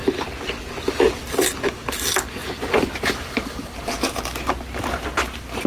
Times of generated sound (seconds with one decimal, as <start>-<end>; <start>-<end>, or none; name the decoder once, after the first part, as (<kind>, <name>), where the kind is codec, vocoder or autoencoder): 2.4-4.2 (vocoder, BigVGAN v2)